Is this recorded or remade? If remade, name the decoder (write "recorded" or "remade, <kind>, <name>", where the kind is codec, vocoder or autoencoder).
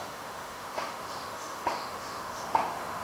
remade, autoencoder, DAC-VAE